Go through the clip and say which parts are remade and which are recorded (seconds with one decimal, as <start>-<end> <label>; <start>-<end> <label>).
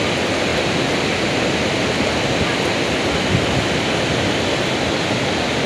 0.0-5.7 recorded